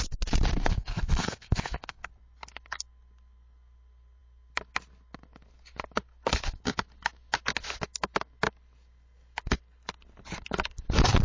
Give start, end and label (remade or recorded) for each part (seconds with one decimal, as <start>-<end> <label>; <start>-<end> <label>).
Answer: 0.0-0.5 recorded; 0.5-2.1 remade; 2.1-11.2 recorded